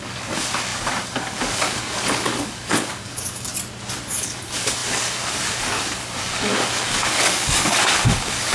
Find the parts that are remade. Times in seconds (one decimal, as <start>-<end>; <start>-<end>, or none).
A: 0.0-3.5; 4.1-8.5